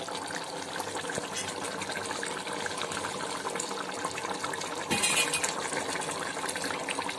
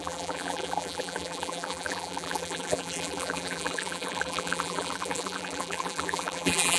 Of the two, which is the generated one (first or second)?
second